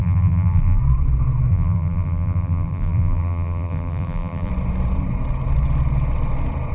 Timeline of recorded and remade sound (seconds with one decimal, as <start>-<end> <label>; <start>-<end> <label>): 0.0-0.8 remade; 0.8-1.5 recorded; 1.5-4.5 remade; 4.5-6.7 recorded